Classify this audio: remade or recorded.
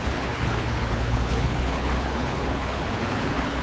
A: remade